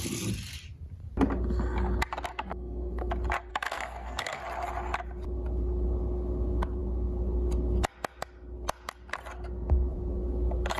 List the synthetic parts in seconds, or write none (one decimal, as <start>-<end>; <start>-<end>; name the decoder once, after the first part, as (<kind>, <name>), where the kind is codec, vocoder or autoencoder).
2.3-3.1 (codec, SNAC); 3.5-4.4